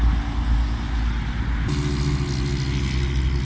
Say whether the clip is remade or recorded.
recorded